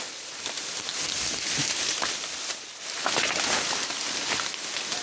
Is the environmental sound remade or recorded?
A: recorded